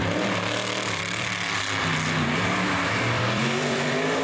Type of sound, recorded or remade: remade